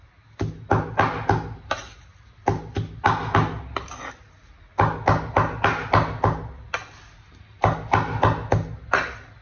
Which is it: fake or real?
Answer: real